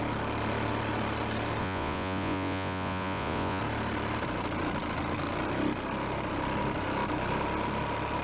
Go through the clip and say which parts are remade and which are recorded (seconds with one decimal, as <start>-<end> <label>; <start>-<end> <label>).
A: 0.0-1.6 recorded; 1.6-3.6 remade; 3.6-8.2 recorded

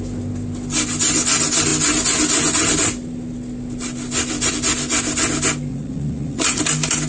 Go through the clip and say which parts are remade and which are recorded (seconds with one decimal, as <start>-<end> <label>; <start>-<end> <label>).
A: 0.0-5.7 recorded; 5.7-6.6 remade; 6.6-7.1 recorded

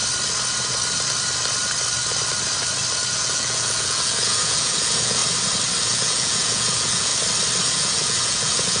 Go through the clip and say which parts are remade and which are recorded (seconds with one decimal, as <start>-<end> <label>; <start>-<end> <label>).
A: 0.0-3.1 recorded; 3.1-5.2 remade; 5.2-5.8 recorded; 5.8-7.1 remade; 7.1-7.6 recorded; 7.6-8.8 remade

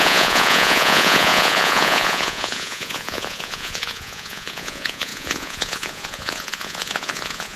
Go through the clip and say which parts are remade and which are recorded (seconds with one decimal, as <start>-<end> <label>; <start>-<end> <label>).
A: 0.0-7.6 remade